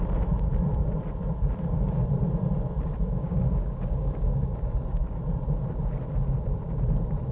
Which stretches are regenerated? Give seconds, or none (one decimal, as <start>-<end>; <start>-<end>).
3.2-4.7